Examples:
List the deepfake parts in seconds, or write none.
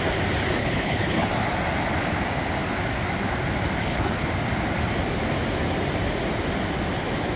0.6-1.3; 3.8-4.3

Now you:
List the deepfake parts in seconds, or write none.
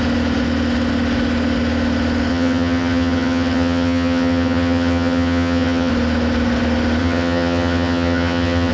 2.3-5.9; 7.0-8.7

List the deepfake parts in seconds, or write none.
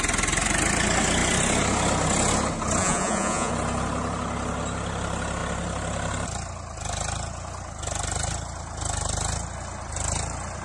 2.8-3.5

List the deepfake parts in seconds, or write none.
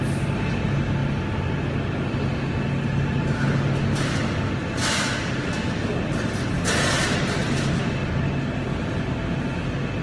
none